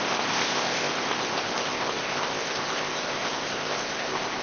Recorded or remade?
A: remade